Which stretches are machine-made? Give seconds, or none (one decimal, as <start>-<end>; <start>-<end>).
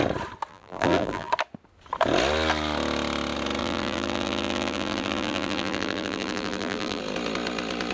0.5-1.3; 3.6-7.0